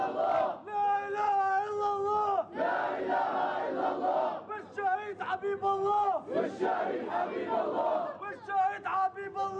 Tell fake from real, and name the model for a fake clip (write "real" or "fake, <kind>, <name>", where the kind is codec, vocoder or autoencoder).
real